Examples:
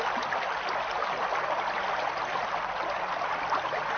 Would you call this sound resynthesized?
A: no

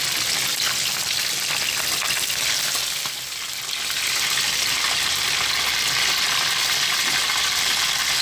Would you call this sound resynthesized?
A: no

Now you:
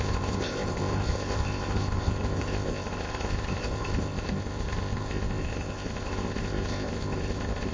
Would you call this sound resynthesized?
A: yes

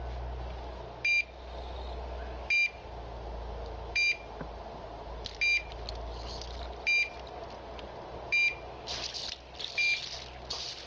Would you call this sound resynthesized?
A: no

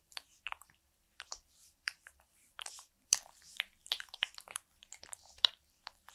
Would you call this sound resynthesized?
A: yes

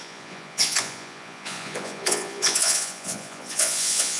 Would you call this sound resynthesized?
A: yes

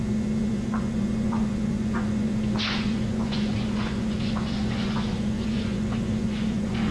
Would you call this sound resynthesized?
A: yes